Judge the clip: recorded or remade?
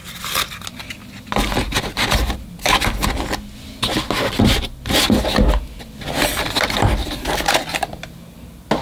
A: recorded